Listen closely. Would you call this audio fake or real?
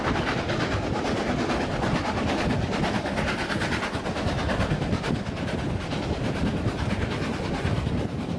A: real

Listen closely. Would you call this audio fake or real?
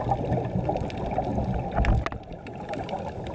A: real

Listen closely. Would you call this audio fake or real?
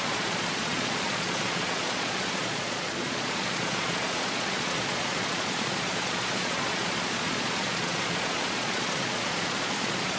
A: fake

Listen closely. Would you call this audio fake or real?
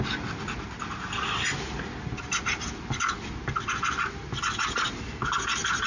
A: real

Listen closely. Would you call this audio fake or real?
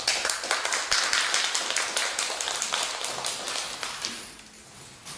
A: real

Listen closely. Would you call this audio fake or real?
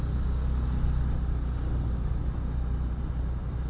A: real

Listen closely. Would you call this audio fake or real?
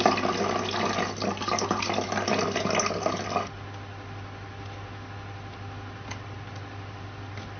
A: real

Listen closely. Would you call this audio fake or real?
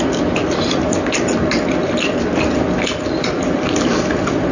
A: real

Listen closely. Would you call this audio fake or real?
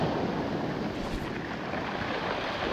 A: real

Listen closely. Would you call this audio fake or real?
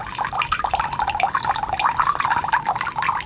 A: real